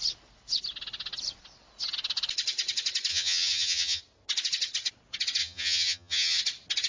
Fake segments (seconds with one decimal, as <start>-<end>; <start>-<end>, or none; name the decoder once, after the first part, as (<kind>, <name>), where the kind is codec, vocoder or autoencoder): 3.1-4.0 (vocoder, HiFi-GAN); 5.4-6.4